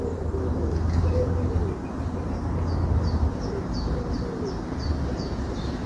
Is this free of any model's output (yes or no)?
yes